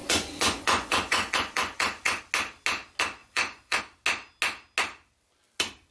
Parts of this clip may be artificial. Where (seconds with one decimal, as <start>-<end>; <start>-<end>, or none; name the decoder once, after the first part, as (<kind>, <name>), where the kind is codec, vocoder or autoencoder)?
0.0-2.2 (vocoder, Vocos); 3.2-3.8